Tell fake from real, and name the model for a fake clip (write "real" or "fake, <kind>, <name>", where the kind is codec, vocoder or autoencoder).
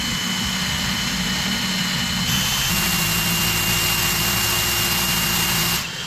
real